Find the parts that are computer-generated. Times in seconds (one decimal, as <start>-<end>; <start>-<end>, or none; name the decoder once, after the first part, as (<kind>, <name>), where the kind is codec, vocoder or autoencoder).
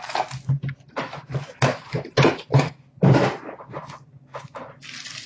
none